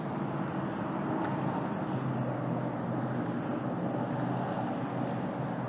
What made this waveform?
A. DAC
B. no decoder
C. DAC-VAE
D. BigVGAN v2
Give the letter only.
B